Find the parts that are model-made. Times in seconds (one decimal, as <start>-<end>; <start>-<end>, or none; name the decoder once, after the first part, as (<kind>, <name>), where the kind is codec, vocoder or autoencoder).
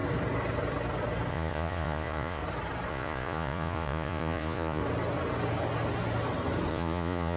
1.3-2.4 (vocoder, Vocos); 2.9-4.8; 6.7-7.4